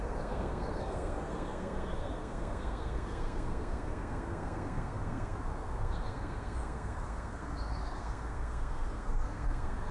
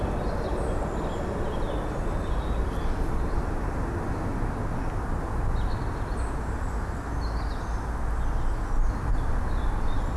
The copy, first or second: first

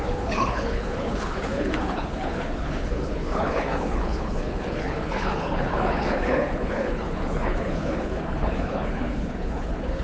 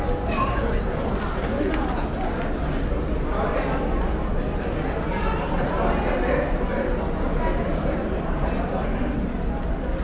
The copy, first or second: first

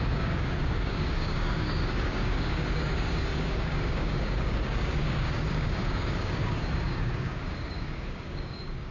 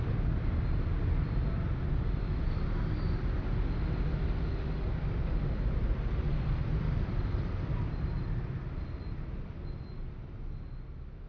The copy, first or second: first